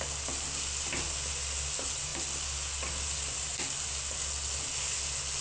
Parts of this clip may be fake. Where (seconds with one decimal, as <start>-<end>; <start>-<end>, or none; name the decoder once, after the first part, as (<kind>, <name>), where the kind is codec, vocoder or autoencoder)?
none